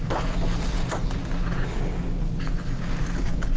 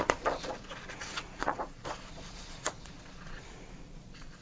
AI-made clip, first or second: second